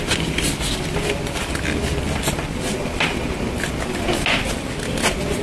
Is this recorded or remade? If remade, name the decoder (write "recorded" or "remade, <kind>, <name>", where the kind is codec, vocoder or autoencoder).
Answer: recorded